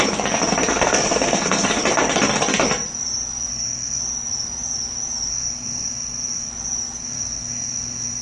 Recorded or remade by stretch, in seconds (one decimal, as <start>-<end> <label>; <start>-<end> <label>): 0.0-0.7 recorded; 0.7-1.8 remade; 1.8-3.5 recorded; 3.5-4.0 remade; 4.0-5.3 recorded; 5.3-6.5 remade; 6.5-7.0 recorded; 7.0-8.2 remade